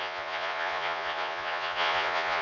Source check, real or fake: fake